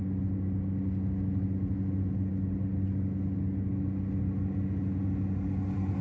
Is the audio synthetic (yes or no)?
no